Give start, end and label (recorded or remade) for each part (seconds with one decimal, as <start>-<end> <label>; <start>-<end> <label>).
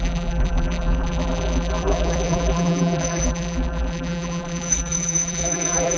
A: 0.0-6.0 remade